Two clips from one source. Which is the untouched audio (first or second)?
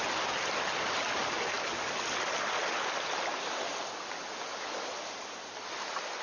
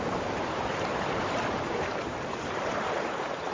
first